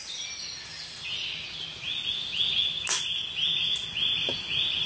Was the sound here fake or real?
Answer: real